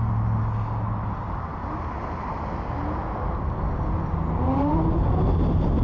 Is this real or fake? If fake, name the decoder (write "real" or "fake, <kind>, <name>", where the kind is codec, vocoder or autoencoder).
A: real